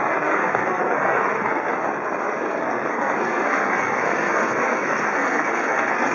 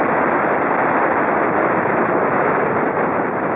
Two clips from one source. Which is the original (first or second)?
second